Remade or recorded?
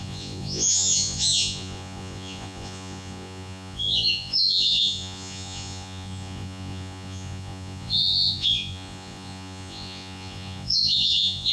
remade